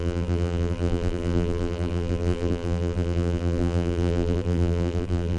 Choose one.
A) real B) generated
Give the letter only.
B